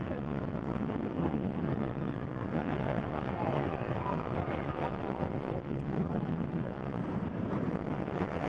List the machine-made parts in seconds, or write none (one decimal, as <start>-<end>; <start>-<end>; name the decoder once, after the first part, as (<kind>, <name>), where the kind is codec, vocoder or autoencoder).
0.0-7.0 (vocoder, WaveNeXt); 7.7-8.5